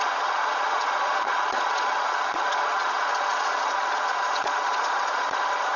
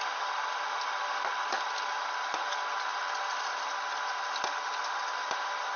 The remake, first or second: first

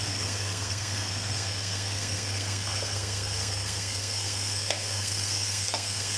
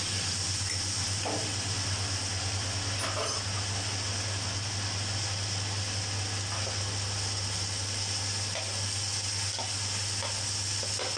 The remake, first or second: first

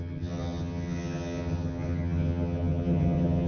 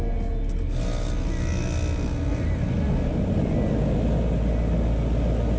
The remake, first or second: first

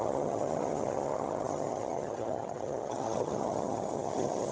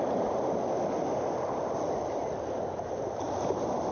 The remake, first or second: first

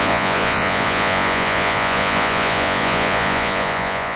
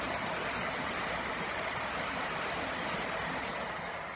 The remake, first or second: first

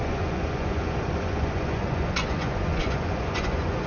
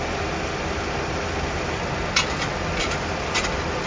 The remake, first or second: first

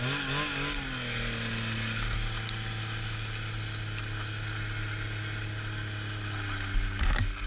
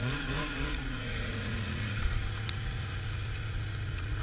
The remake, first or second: second